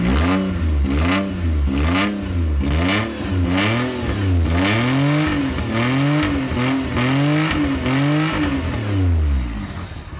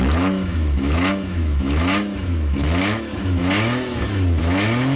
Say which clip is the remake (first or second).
second